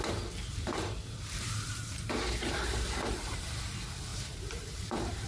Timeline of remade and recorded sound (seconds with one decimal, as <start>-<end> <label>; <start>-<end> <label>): 0.0-0.4 recorded; 0.4-3.6 remade; 3.6-4.1 recorded; 4.1-5.3 remade